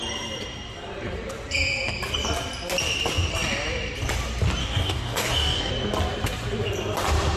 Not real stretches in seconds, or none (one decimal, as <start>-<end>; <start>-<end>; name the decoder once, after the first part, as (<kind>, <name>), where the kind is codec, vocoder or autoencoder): 4.6-5.7 (codec, DAC)